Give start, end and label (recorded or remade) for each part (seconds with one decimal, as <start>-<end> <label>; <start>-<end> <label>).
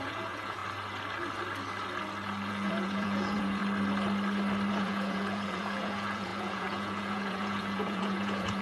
0.0-0.6 remade; 0.6-2.5 recorded; 2.5-3.6 remade; 3.6-4.7 recorded; 4.7-8.6 remade